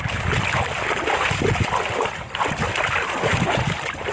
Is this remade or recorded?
recorded